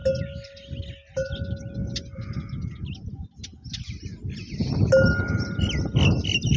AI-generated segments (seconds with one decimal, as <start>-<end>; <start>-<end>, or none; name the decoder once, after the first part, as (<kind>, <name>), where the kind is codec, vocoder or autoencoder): none